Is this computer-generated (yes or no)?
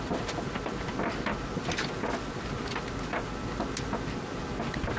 no